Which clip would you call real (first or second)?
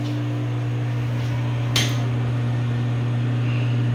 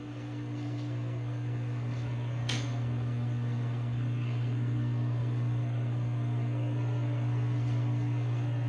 first